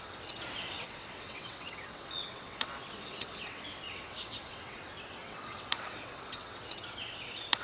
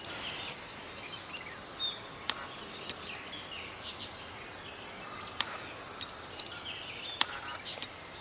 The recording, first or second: second